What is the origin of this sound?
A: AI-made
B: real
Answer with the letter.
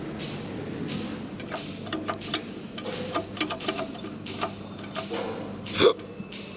B